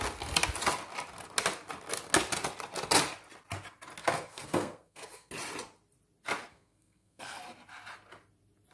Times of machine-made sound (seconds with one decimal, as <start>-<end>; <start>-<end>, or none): 4.0-5.3; 6.5-7.4